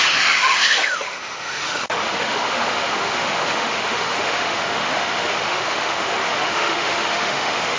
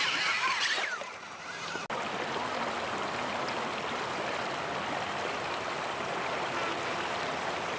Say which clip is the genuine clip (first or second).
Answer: second